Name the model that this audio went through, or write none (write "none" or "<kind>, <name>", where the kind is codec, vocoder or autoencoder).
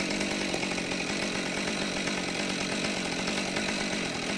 none